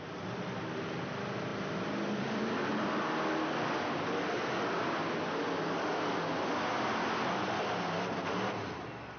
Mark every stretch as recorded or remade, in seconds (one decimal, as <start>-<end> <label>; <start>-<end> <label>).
0.0-9.2 recorded